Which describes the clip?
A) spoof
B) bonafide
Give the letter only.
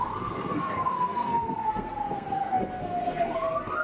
A